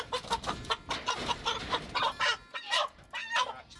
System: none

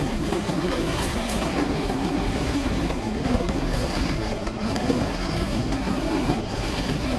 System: codec, SNAC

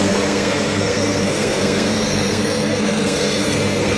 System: codec, SNAC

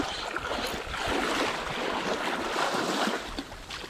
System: none